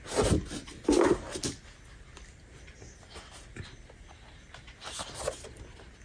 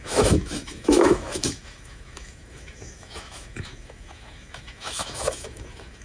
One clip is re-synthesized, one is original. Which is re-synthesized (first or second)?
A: second